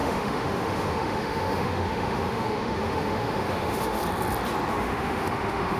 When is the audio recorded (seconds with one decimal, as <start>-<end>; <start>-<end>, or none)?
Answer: 4.0-4.7